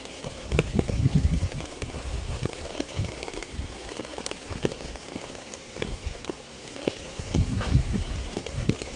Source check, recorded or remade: remade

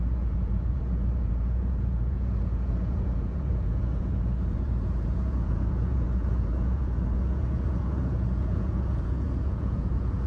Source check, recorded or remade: remade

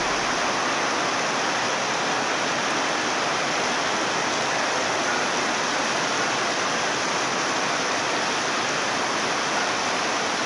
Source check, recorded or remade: recorded